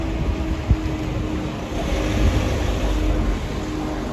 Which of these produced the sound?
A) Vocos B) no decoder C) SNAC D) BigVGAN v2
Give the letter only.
B